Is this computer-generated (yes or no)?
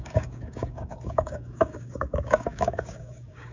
yes